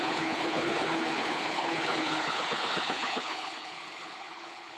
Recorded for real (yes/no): no